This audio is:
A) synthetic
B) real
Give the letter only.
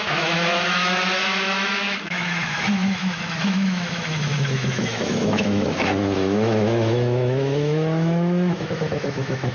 A